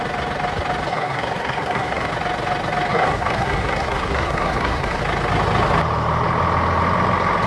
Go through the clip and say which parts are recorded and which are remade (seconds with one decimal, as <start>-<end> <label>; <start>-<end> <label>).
0.0-0.9 recorded; 0.9-2.1 remade; 2.1-2.9 recorded; 2.9-5.0 remade; 5.0-7.5 recorded